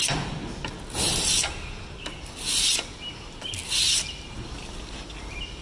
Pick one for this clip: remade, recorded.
recorded